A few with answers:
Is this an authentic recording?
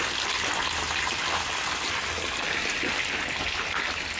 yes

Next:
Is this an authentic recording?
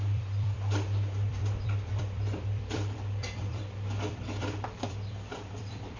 no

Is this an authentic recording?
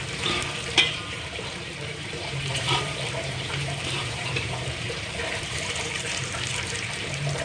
no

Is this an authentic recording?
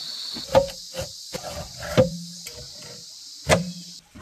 no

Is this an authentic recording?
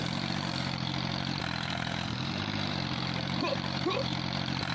no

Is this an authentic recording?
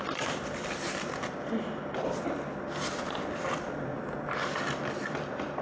no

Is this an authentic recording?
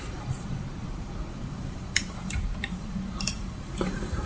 no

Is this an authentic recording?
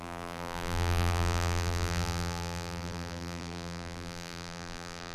no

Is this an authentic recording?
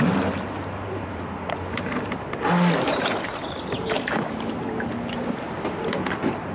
yes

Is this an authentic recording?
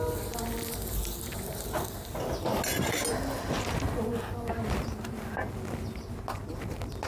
yes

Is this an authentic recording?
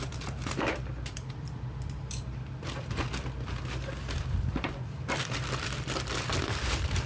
no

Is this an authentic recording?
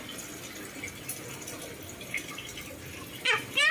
yes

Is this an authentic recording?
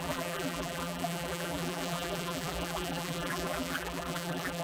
no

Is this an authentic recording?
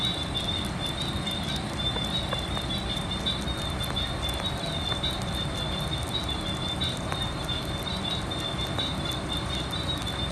yes